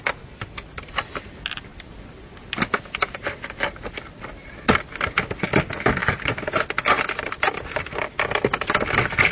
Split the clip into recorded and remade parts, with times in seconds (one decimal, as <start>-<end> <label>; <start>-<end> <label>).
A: 0.0-9.3 recorded